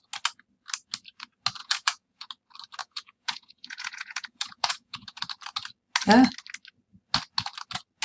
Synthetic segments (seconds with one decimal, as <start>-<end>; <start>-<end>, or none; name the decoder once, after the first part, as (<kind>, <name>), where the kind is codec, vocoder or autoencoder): 1.6-2.3 (vocoder, Vocos); 2.8-5.2